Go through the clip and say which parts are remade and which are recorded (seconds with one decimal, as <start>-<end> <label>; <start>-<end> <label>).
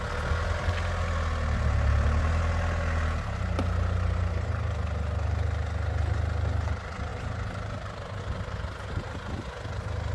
0.0-10.1 recorded